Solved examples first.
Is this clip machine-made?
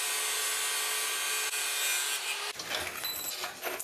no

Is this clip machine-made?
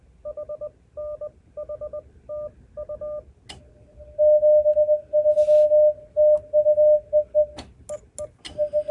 no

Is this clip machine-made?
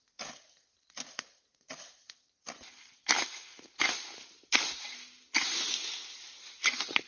no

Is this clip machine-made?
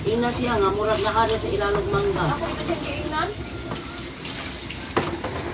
no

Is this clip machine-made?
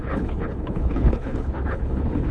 yes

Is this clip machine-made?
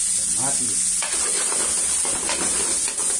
no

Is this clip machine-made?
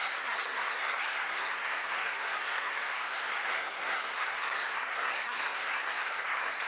yes